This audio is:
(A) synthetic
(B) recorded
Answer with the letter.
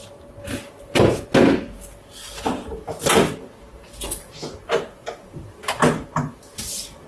B